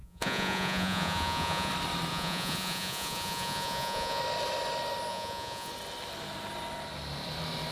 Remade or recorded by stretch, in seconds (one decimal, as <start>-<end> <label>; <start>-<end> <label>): 0.0-1.7 remade; 1.7-2.1 recorded; 2.1-4.2 remade; 4.2-5.1 recorded; 5.1-5.7 remade; 5.7-7.7 recorded